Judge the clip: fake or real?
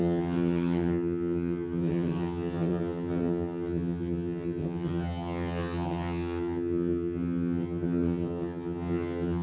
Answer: fake